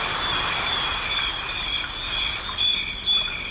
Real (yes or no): yes